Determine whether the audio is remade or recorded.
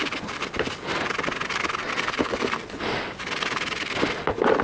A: recorded